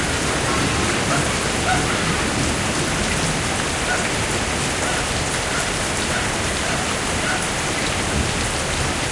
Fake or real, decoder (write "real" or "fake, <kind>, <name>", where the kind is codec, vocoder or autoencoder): real